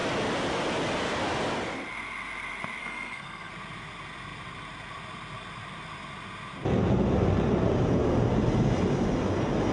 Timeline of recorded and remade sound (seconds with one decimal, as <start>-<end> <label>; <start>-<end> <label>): 0.0-2.8 recorded; 2.8-3.5 remade; 3.5-9.7 recorded